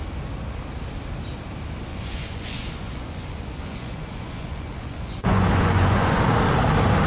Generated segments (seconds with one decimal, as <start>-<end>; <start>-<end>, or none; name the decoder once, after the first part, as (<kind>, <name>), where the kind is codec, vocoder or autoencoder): 1.9-6.2 (vocoder, Vocos)